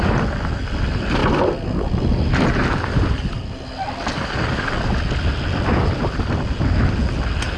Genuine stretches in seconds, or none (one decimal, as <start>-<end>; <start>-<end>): 0.0-7.6